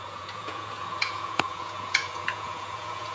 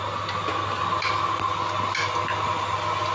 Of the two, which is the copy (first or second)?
first